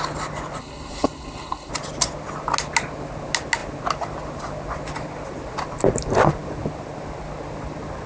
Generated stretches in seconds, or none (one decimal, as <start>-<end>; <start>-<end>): 0.6-1.7